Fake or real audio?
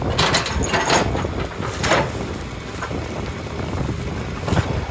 real